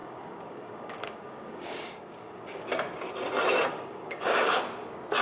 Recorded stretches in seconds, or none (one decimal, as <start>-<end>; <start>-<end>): 3.1-3.7; 4.6-5.2